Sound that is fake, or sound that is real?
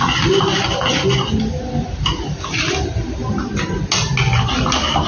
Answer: real